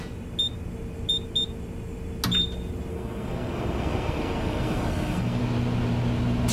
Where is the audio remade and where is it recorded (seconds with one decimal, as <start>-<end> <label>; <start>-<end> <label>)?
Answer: 0.0-2.9 recorded; 2.9-5.4 remade; 5.4-6.5 recorded